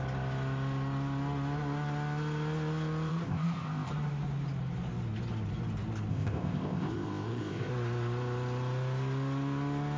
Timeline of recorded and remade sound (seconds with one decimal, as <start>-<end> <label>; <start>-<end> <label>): 0.0-3.1 recorded; 3.1-3.9 remade; 3.9-6.1 recorded; 6.1-7.7 remade; 7.7-10.0 recorded